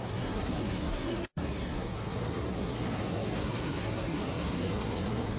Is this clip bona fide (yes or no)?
no